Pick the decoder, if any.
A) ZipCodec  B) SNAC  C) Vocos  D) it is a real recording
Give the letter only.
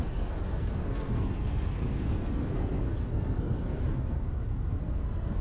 B